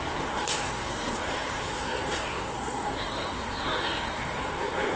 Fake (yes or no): yes